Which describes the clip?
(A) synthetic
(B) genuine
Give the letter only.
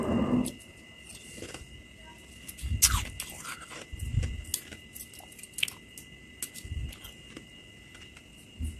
B